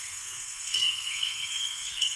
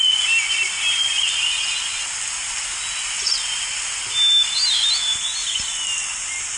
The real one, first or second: second